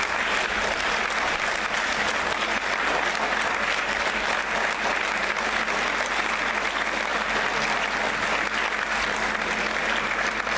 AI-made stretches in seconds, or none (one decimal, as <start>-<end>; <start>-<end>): none